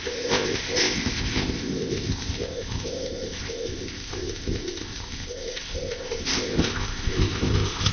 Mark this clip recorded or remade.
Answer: remade